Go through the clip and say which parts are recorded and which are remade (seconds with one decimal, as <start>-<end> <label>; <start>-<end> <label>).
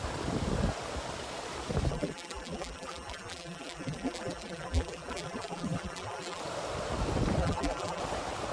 0.0-1.9 recorded; 1.9-6.4 remade; 6.4-7.4 recorded; 7.4-8.0 remade; 8.0-8.5 recorded